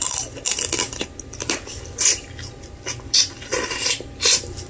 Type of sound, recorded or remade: recorded